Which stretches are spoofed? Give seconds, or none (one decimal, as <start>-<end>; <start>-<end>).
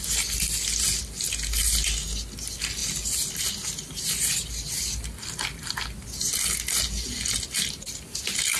none